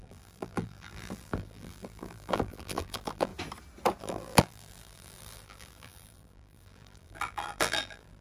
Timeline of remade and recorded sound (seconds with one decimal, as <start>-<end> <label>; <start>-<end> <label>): 0.0-3.3 remade; 3.3-4.0 recorded; 4.0-8.2 remade